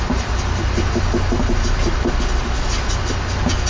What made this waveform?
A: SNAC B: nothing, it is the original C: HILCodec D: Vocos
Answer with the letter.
B